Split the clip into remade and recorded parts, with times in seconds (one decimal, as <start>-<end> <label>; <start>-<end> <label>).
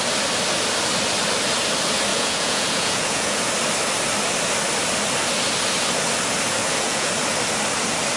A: 0.0-2.1 recorded; 2.1-3.5 remade; 3.5-6.6 recorded; 6.6-7.1 remade; 7.1-8.2 recorded